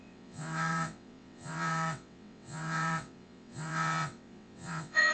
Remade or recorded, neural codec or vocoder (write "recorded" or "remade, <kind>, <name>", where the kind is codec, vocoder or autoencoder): remade, vocoder, WaveNeXt